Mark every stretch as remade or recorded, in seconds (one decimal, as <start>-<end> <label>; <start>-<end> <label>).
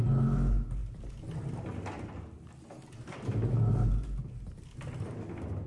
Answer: 0.0-5.7 recorded